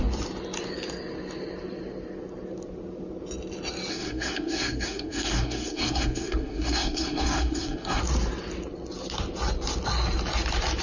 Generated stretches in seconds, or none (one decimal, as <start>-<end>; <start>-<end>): 3.9-8.0